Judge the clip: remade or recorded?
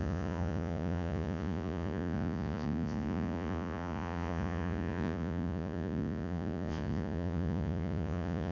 remade